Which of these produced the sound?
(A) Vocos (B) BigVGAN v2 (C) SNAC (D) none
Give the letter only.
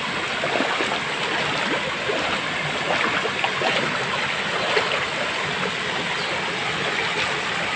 D